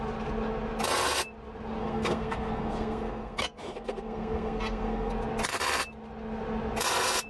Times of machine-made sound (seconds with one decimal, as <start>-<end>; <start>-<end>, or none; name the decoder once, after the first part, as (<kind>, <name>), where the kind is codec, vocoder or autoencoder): 1.8-5.1 (codec, SNAC)